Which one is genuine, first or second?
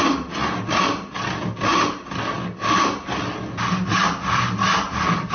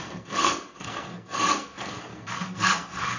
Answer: first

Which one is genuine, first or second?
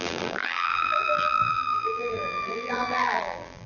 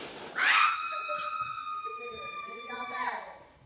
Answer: second